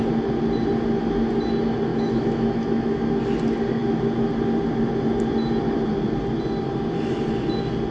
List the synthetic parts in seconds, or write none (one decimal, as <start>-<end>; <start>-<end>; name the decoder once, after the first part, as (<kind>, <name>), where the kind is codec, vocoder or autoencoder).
1.9-3.2 (autoencoder, DAC-VAE)